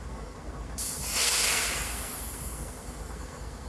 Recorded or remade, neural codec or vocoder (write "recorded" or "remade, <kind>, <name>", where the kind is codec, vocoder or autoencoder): remade, codec, SNAC